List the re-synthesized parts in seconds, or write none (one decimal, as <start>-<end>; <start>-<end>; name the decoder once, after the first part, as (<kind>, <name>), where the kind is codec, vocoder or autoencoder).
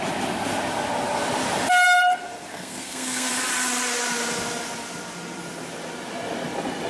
2.5-3.3 (codec, SNAC)